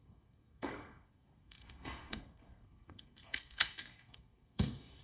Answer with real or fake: fake